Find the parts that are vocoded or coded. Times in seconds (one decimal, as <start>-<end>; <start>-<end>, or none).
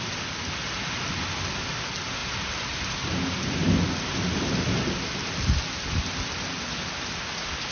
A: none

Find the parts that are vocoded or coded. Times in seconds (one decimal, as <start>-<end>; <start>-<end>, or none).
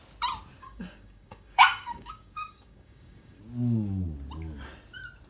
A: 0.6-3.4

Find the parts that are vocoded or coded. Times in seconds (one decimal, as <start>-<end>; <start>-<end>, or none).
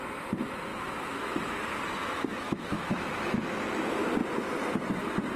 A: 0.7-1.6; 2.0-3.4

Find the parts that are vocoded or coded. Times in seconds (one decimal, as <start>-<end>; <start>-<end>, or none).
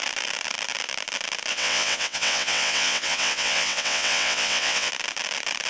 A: 1.5-4.9